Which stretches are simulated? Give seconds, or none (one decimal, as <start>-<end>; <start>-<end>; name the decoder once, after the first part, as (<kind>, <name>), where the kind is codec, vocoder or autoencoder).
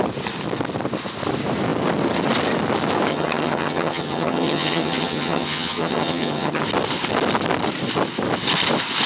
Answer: 3.1-6.6 (vocoder, HiFi-GAN)